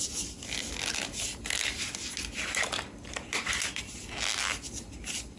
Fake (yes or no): no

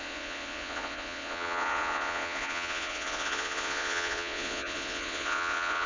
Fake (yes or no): yes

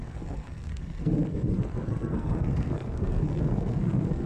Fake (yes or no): yes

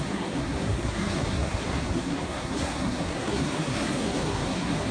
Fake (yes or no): yes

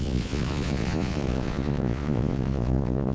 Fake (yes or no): yes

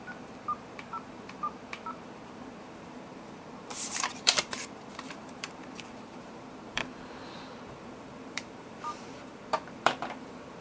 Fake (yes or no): yes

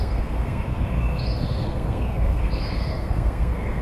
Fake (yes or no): yes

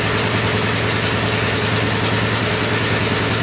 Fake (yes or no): no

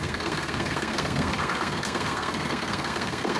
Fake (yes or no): yes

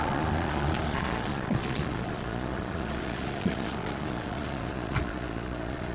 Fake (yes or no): yes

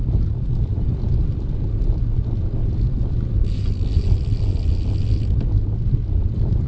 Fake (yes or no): no